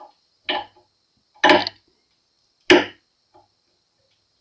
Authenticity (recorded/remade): recorded